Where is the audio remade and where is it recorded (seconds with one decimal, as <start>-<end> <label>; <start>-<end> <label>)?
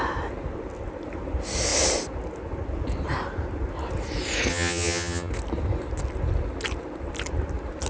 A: 0.0-4.5 recorded; 4.5-5.3 remade; 5.3-7.9 recorded